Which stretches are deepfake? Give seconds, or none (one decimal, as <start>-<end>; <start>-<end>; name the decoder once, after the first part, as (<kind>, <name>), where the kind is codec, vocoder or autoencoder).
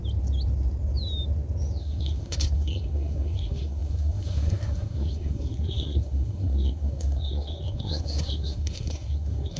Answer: 1.8-9.6 (codec, SNAC)